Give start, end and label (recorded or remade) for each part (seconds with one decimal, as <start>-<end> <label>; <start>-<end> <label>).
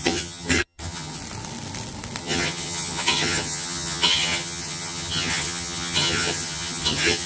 0.0-1.2 remade; 1.2-2.2 recorded; 2.2-7.3 remade